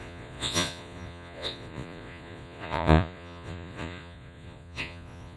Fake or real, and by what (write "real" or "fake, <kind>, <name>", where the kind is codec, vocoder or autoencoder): fake, vocoder, Vocos